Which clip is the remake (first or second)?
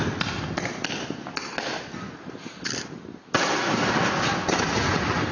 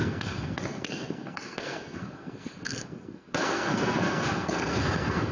second